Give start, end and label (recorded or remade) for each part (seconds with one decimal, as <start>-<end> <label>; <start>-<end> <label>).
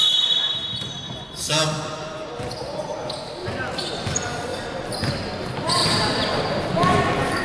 0.0-0.6 recorded; 0.6-1.3 remade; 1.3-2.9 recorded; 2.9-3.9 remade; 3.9-7.4 recorded